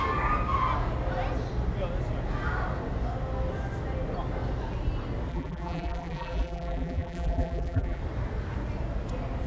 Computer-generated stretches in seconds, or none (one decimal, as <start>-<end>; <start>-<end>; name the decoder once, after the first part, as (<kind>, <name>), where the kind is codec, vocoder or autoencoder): 5.3-8.0 (vocoder, BigVGAN v2)